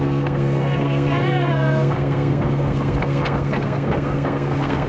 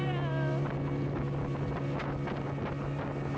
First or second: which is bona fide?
second